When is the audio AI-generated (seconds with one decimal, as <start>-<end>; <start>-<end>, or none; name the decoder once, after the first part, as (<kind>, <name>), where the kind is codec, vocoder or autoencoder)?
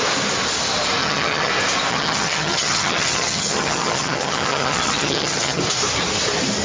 1.0-1.5 (vocoder, HiFi-GAN); 1.9-5.6